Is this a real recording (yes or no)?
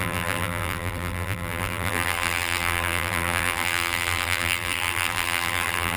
no